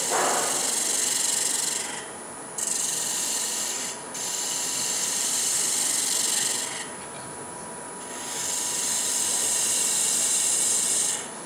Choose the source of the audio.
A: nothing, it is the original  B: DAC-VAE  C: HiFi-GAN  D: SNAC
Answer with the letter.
A